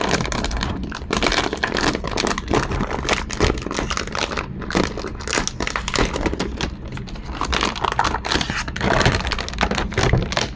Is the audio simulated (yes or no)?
no